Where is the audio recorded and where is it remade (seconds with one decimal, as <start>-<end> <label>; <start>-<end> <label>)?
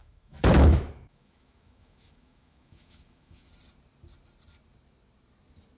0.0-3.5 remade; 3.5-5.8 recorded